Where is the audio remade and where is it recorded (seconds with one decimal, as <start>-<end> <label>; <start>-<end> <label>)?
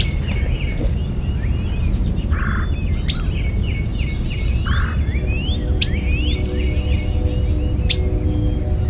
0.0-3.9 recorded; 3.9-4.8 remade; 4.8-8.9 recorded